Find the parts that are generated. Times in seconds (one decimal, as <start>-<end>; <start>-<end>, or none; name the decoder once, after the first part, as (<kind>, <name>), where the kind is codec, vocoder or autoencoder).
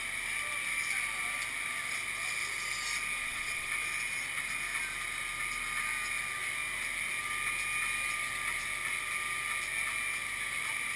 3.2-3.7 (vocoder, WaveNeXt)